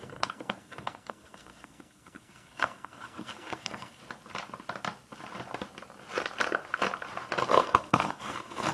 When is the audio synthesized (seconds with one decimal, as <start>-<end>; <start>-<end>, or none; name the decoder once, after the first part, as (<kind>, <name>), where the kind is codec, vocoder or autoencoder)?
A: 0.0-4.0 (codec, SNAC); 7.5-8.7